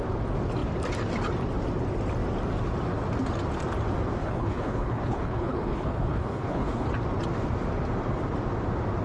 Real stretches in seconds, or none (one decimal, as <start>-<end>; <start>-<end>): 0.0-4.2; 6.9-9.0